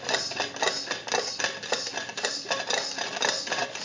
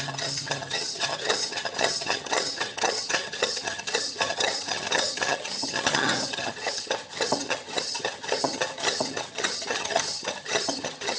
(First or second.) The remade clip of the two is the second